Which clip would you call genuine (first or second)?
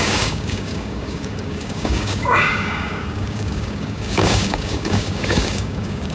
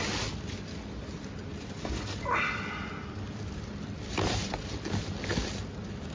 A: second